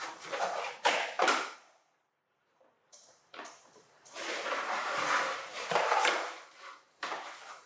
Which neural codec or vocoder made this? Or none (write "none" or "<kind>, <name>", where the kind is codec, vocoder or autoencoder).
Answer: vocoder, BigVGAN v2